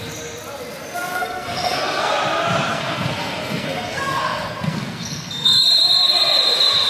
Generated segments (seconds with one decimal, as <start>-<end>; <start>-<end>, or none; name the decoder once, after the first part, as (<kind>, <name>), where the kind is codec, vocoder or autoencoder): 1.1-2.1 (codec, SNAC); 2.7-5.6